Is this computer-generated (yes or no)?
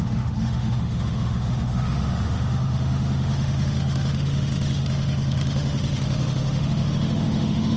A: yes